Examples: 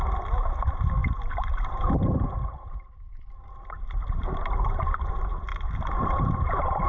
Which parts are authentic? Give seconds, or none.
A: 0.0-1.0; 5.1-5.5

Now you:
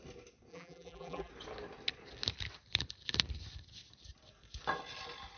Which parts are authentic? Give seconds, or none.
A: 0.0-0.5; 1.3-5.4

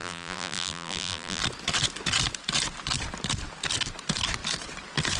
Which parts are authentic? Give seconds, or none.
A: 1.4-5.2

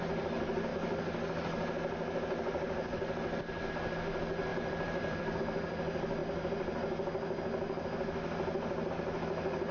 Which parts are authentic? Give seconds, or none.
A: 0.0-4.5; 5.4-9.7

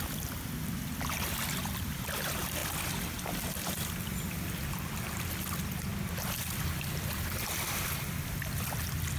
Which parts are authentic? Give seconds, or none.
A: 2.6-5.3; 5.9-6.7

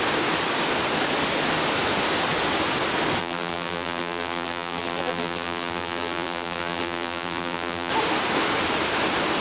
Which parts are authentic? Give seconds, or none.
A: 0.0-3.2; 7.9-9.4